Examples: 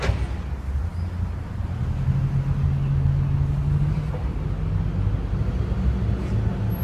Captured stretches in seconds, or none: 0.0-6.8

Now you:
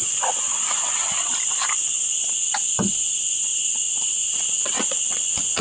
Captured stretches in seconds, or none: 0.5-2.9